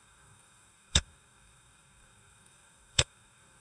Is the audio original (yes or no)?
no